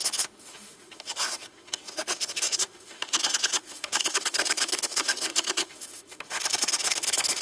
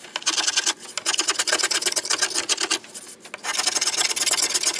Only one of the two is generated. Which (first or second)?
first